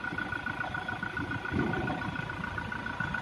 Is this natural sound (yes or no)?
yes